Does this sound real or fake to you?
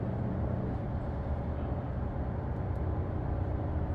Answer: real